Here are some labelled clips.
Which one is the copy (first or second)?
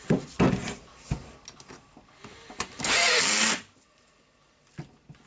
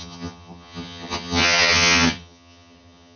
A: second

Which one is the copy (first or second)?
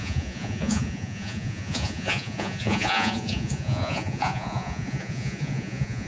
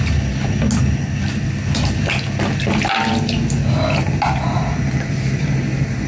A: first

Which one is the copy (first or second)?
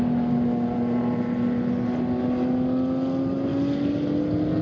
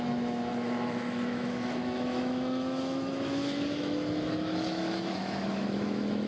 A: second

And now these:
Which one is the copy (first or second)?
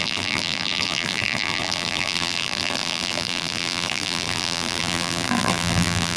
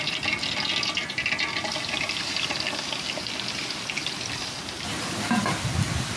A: first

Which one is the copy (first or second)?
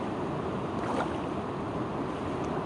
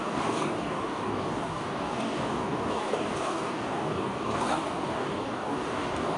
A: second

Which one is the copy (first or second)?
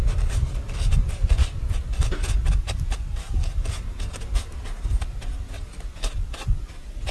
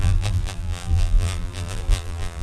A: second